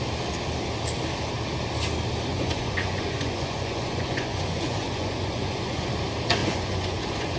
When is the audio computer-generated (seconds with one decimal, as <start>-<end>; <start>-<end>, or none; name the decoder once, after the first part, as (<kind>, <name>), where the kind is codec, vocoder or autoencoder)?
2.3-5.9 (vocoder, Vocos); 6.4-7.4